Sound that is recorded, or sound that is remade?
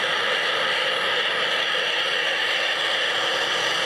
recorded